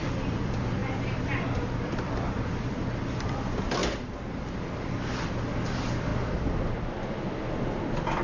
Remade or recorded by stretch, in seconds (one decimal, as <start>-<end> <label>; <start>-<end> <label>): 0.0-3.8 remade; 3.8-4.3 recorded; 4.3-6.1 remade; 6.1-7.1 recorded; 7.1-8.2 remade